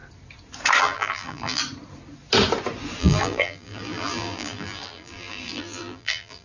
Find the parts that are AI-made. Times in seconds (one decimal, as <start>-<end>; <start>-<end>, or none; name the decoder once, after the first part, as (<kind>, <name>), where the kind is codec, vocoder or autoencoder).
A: 0.8-1.6 (vocoder, BigVGAN v2); 3.0-6.4